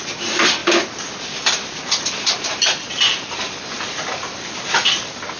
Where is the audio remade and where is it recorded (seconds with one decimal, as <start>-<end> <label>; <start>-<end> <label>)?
0.0-5.4 recorded